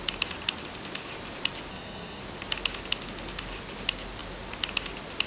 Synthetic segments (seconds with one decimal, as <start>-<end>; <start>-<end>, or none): 1.7-2.2